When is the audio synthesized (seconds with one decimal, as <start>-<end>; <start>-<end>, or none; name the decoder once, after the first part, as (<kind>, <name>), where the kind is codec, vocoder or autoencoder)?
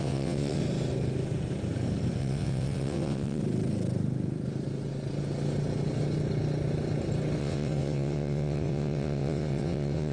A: 0.0-0.6 (vocoder, WaveNeXt); 2.2-3.4; 7.4-10.1